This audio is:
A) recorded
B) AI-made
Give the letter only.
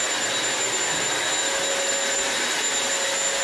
A